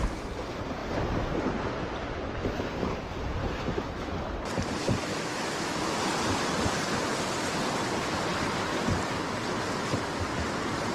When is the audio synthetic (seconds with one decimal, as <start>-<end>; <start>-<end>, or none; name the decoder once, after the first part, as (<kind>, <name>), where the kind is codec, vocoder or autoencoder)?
3.4-4.1 (autoencoder, DAC-VAE); 5.1-6.0